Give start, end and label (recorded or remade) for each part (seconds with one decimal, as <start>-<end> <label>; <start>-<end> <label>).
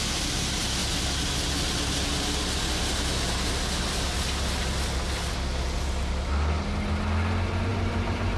0.0-7.7 recorded; 7.7-8.4 remade